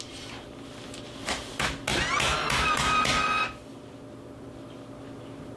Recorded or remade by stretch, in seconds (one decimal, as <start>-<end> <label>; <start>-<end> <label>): 0.0-5.6 recorded